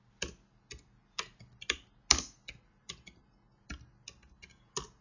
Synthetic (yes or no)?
no